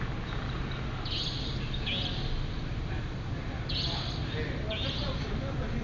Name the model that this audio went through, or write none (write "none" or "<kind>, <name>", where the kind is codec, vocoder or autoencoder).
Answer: none